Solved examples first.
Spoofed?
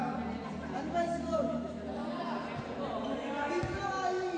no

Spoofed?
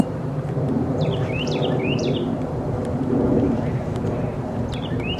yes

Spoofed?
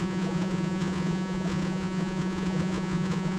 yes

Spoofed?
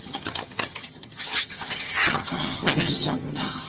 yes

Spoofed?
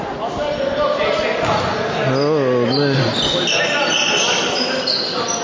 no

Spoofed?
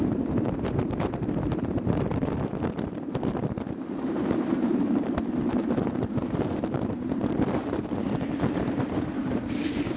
yes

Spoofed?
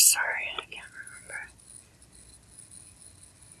no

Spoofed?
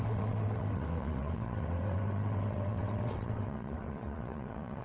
yes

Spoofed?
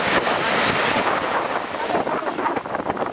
no